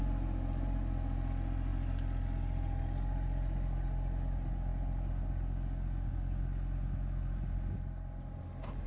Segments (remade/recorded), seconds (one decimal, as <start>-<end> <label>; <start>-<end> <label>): 0.0-8.9 recorded